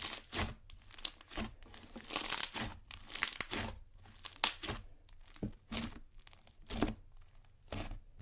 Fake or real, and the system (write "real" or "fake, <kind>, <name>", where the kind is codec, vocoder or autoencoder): real